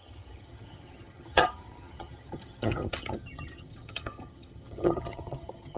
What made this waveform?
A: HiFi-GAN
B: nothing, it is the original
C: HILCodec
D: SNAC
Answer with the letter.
A